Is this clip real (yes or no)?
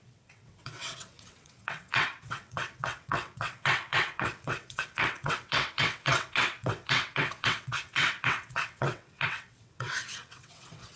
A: no